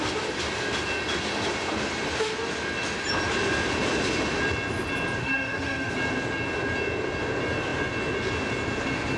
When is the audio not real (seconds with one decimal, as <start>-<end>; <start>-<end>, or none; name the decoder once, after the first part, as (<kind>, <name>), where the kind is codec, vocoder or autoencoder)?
5.2-5.9 (autoencoder, DAC-VAE)